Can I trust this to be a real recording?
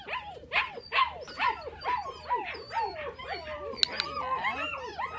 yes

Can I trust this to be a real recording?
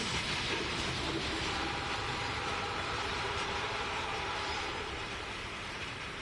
no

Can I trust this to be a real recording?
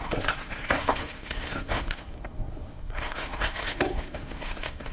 no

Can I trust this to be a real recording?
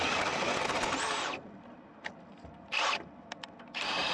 yes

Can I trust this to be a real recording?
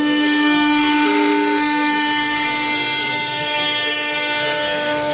no